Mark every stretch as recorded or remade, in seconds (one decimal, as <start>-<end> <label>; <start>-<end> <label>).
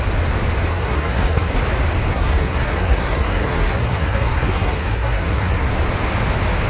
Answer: 0.0-0.7 recorded; 0.7-1.6 remade; 1.6-2.1 recorded; 2.1-5.7 remade; 5.7-6.7 recorded